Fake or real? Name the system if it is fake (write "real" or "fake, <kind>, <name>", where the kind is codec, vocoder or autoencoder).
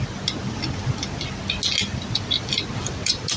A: real